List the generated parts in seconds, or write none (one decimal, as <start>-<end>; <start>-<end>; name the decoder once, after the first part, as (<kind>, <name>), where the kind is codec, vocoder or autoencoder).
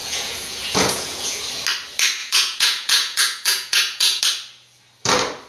0.0-1.4 (vocoder, Vocos); 2.2-4.2